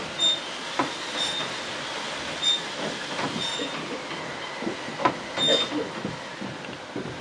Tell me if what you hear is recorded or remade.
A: recorded